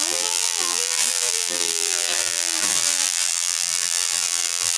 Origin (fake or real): fake